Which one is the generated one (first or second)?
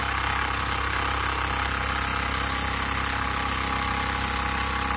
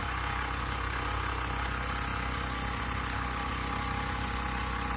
second